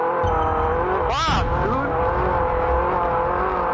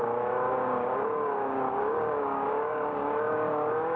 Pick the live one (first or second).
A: first